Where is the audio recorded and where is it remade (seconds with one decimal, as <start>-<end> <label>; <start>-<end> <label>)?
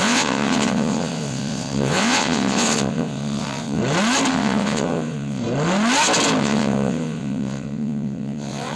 0.0-3.8 remade; 3.8-4.3 recorded; 4.3-5.4 remade; 5.4-6.4 recorded; 6.4-8.8 remade